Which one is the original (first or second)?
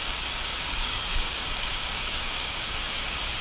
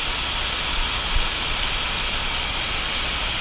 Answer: second